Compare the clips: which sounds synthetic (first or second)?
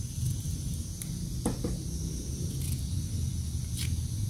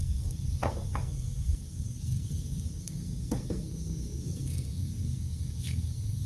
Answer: second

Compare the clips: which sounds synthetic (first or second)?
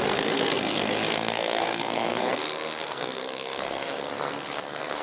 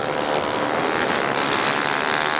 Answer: first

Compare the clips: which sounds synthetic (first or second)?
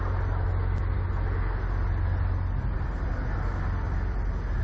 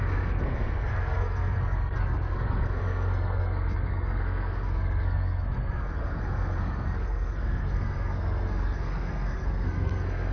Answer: second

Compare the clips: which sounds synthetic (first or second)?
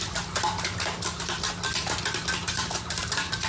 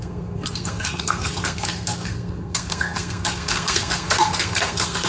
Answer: second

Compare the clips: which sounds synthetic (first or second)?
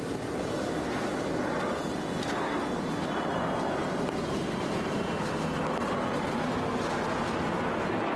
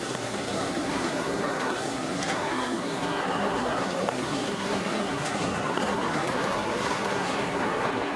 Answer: second